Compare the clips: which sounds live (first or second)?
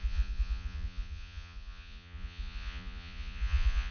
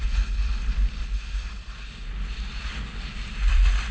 second